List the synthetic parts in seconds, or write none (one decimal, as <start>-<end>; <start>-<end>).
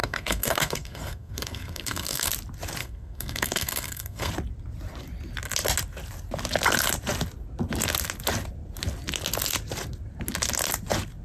0.0-2.3; 2.8-4.3